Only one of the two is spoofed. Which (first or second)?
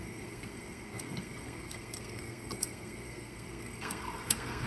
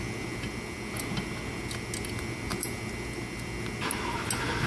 first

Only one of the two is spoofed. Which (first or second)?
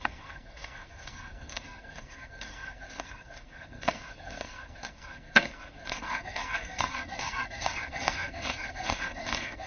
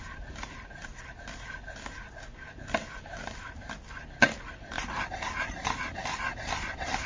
first